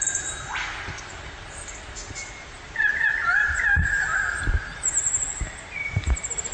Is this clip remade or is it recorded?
recorded